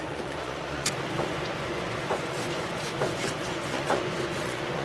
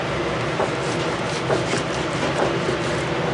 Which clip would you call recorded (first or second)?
second